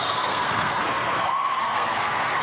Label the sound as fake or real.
fake